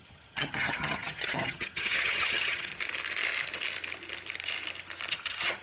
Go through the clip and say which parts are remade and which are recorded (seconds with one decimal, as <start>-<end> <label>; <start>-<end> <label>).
0.0-2.7 remade; 2.7-5.1 recorded; 5.1-5.6 remade